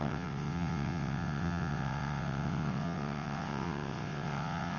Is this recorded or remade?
remade